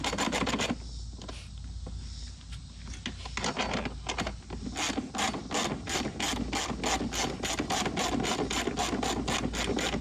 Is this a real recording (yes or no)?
yes